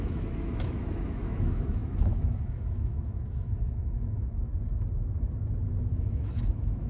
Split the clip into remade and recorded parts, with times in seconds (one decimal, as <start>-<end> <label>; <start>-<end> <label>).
0.0-4.5 remade; 4.5-6.0 recorded; 6.0-6.9 remade